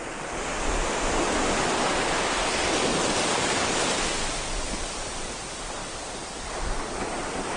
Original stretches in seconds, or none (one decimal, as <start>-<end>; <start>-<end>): 0.5-3.1